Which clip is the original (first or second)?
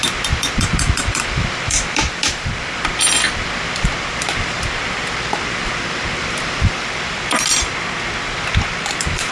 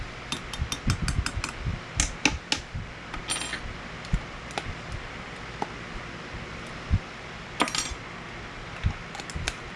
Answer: second